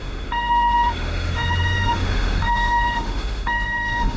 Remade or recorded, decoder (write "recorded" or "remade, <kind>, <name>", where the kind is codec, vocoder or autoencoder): remade, autoencoder, DAC-VAE